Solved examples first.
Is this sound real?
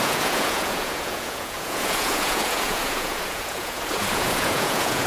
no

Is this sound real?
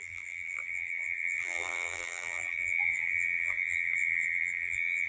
no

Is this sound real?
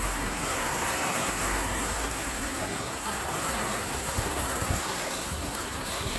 no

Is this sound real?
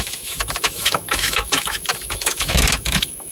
no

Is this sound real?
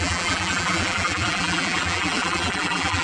no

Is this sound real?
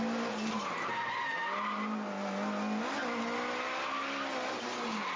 yes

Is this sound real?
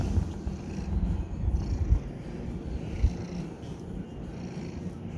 yes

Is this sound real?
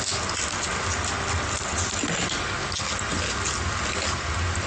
yes